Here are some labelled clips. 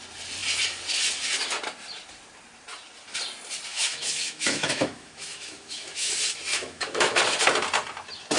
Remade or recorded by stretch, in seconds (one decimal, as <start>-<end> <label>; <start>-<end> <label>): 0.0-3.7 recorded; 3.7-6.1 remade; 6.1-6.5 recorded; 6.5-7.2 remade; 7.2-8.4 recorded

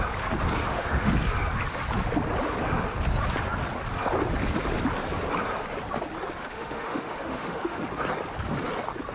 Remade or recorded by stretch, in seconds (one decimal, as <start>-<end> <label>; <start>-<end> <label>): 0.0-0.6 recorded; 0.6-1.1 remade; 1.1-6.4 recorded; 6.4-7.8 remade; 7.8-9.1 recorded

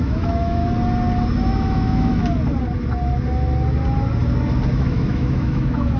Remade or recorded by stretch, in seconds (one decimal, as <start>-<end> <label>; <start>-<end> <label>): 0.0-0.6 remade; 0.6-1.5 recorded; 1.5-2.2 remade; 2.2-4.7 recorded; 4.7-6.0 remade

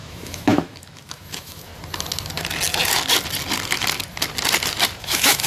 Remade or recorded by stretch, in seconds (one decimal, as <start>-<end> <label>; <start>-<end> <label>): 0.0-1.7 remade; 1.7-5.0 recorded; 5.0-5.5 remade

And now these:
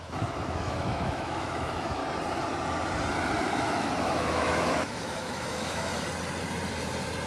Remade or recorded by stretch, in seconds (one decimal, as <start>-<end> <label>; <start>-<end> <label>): 0.0-2.0 remade; 2.0-3.6 recorded; 3.6-5.9 remade; 5.9-7.3 recorded

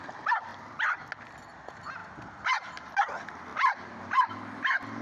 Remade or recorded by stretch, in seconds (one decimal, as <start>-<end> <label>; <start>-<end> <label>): 0.0-5.0 recorded

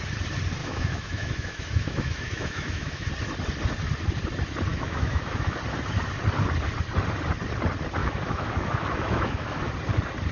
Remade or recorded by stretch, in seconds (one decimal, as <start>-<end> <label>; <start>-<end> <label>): 0.0-0.6 recorded; 0.6-3.1 remade; 3.1-4.7 recorded; 4.7-5.6 remade; 5.6-8.0 recorded; 8.0-9.7 remade; 9.7-10.3 recorded

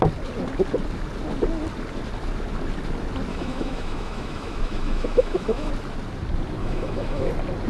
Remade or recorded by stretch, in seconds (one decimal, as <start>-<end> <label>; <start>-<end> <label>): 0.0-3.3 recorded; 3.3-5.7 remade; 5.7-6.6 recorded; 6.6-7.3 remade; 7.3-7.7 recorded